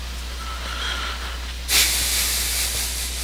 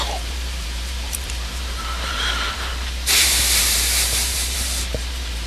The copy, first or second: second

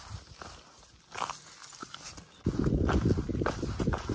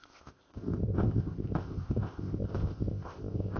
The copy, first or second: second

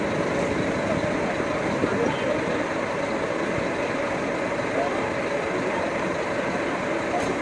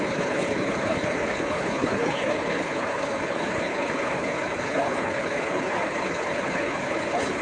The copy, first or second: second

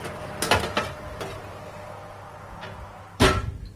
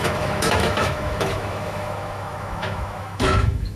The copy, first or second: second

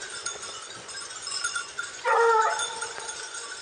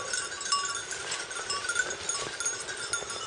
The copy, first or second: first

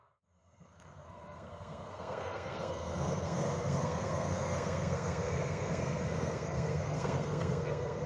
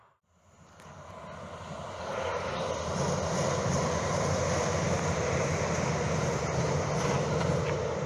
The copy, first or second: first